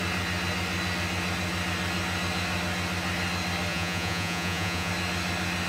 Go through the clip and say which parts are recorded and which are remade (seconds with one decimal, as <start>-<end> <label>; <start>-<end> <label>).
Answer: 0.0-3.7 recorded; 3.7-4.9 remade; 4.9-5.7 recorded